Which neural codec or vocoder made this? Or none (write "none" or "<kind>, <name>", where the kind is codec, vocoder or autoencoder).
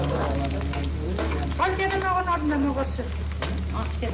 none